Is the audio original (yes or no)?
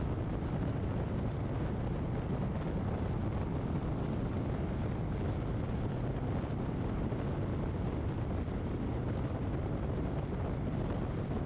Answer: yes